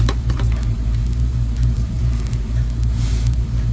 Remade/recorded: remade